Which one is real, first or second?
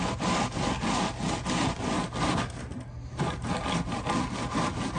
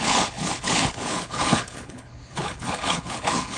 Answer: first